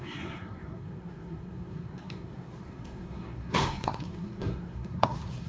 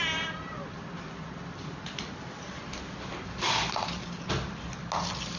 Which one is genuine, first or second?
second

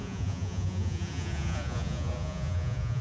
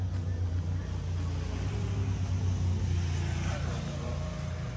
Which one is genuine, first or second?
second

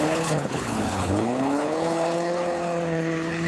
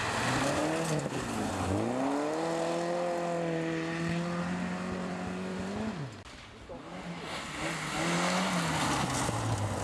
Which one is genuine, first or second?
second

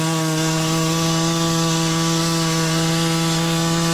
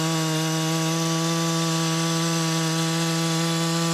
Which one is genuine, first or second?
second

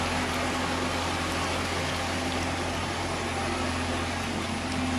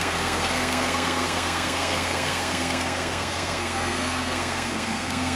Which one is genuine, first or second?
first